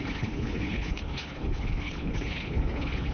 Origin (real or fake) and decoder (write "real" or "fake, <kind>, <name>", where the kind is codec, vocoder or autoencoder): fake, codec, HILCodec